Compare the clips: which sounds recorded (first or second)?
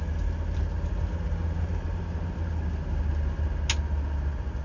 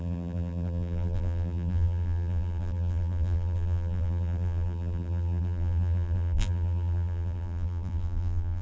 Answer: first